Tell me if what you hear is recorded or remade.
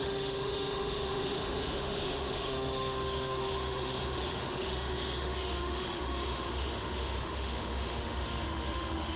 remade